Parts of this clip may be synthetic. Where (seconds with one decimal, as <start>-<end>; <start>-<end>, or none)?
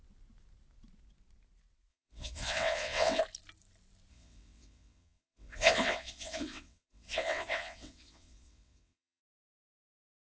1.9-3.2; 4.1-9.2